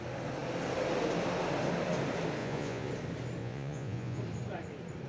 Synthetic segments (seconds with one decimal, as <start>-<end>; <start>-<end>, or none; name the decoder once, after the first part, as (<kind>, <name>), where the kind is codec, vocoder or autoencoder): 2.4-2.9 (vocoder, Vocos); 3.4-4.2